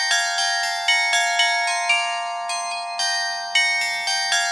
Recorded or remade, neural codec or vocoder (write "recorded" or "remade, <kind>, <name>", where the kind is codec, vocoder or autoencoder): recorded